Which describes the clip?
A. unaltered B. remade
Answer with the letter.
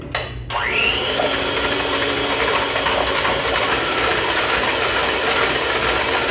A